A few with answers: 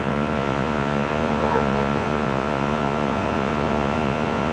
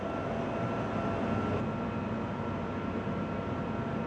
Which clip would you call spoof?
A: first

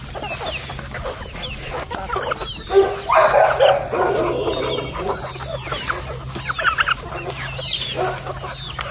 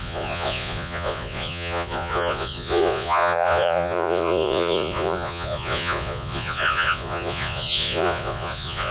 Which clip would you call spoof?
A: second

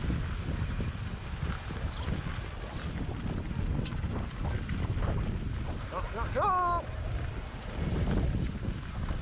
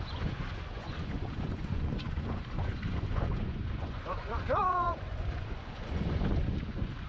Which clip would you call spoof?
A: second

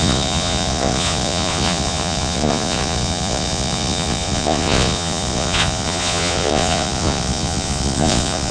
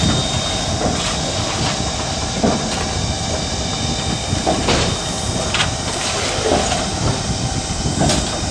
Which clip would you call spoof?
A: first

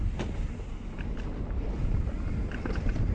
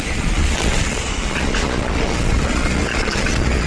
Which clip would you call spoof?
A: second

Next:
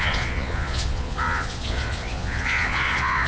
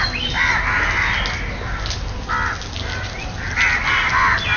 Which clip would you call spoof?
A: first